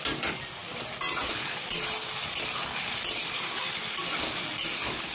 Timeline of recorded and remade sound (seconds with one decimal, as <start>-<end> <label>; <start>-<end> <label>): 0.0-5.1 recorded